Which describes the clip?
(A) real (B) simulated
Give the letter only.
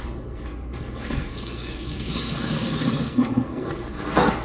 B